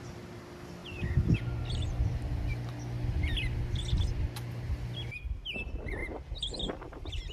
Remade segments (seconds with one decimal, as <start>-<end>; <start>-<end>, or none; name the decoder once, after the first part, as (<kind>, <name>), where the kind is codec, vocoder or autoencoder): none